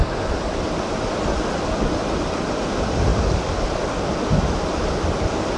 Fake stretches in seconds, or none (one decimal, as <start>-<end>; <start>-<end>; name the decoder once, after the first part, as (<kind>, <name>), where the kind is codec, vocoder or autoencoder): none